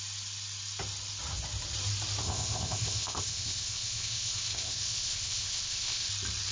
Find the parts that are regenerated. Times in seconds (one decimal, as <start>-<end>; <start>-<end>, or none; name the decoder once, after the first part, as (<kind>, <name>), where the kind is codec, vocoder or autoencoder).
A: 2.2-6.1 (codec, ZipCodec)